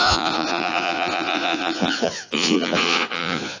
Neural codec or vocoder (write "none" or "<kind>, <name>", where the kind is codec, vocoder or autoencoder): vocoder, Vocos